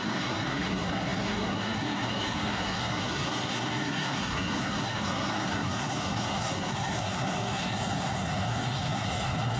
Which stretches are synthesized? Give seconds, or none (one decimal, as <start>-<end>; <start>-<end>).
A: 0.0-9.6